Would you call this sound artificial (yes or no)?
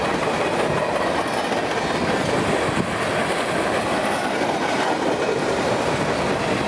no